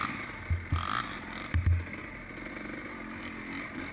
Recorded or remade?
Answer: recorded